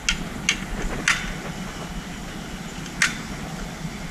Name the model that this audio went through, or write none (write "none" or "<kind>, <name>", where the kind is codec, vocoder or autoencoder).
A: none